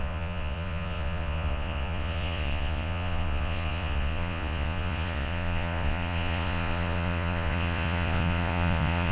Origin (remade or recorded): remade